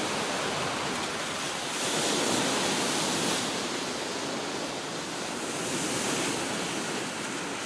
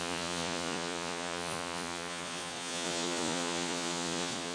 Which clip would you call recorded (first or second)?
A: first